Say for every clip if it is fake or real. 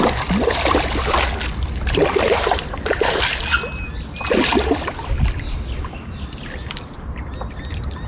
real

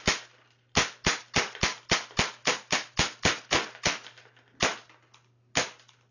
real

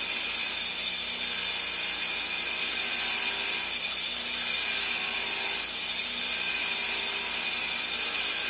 real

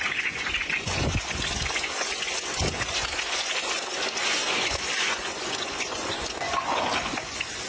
fake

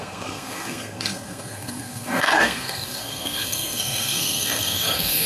fake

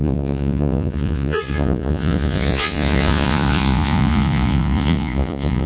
fake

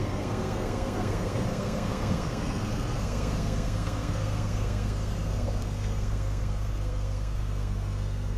fake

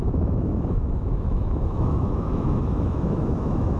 fake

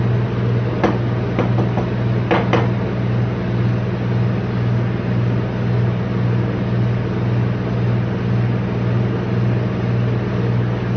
real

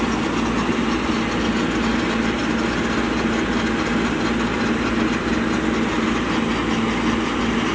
real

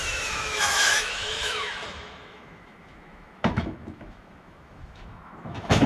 fake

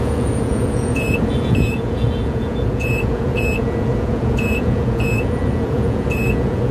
fake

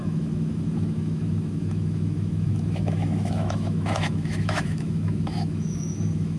fake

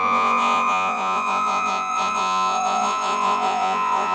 fake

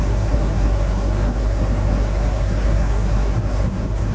fake